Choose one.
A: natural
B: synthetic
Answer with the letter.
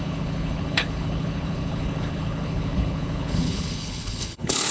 B